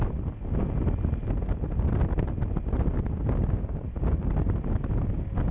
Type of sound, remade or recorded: recorded